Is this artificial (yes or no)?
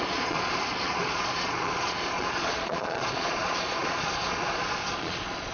yes